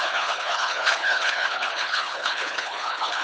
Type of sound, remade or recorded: remade